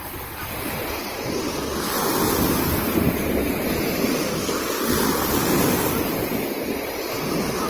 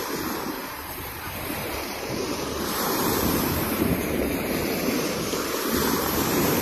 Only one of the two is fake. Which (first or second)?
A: second